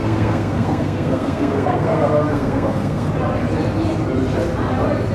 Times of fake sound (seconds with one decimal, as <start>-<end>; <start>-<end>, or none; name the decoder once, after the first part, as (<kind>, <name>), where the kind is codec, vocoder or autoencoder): 0.0-3.1 (codec, SNAC)

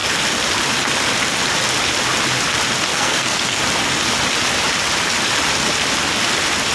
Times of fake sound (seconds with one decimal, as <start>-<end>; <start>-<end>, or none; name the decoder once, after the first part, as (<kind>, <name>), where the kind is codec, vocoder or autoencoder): 2.9-3.6 (codec, SNAC)

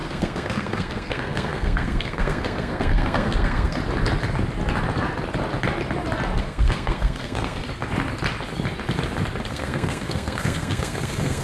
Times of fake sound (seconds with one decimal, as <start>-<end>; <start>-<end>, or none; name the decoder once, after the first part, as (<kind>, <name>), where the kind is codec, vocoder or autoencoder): 0.0-3.8 (codec, SNAC); 6.4-7.6; 9.5-11.4

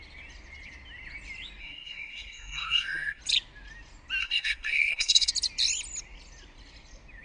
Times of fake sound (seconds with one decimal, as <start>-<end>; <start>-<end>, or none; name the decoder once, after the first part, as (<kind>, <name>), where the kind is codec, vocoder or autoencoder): 1.6-3.2 (codec, SNAC); 4.2-5.3